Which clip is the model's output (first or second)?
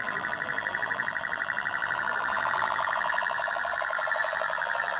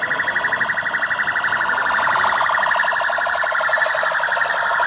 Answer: first